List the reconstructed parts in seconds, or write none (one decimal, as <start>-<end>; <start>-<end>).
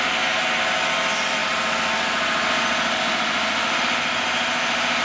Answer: none